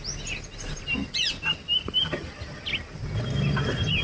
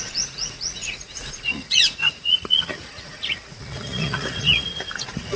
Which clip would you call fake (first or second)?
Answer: second